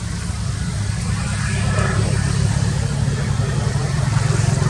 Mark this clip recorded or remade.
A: recorded